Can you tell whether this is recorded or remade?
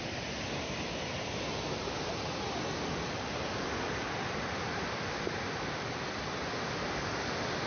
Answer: recorded